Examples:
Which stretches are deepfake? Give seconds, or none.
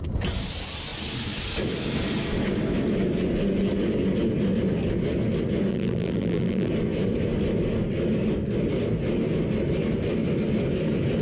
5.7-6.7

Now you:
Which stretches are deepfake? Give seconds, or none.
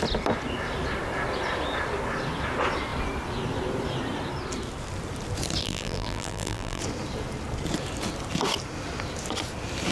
5.6-6.8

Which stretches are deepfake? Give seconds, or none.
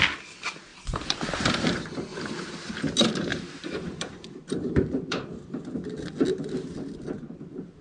0.7-1.7; 3.3-5.5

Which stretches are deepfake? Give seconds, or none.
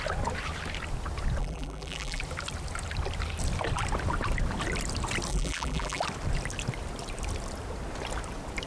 1.4-2.2; 5.3-6.0